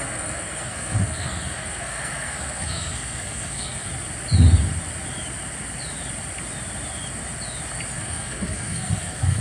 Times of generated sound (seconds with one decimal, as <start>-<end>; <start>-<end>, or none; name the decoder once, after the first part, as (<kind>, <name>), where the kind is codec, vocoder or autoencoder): 0.0-3.9 (codec, SNAC); 8.0-9.4